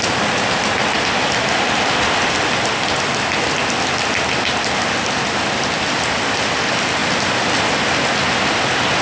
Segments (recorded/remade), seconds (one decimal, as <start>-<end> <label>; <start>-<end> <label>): 0.0-9.0 recorded